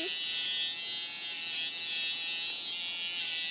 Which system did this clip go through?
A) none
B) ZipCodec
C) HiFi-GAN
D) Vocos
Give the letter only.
A